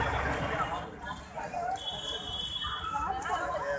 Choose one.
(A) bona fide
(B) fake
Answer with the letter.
A